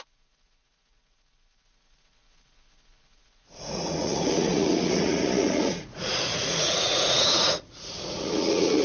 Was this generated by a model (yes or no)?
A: yes